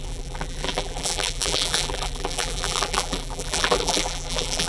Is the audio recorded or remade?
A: remade